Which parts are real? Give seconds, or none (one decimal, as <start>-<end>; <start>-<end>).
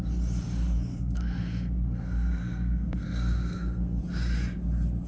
0.0-0.9; 4.0-5.1